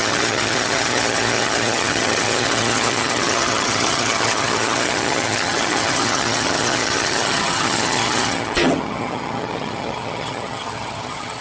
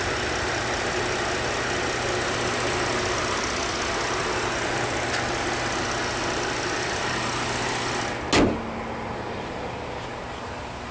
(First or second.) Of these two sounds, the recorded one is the second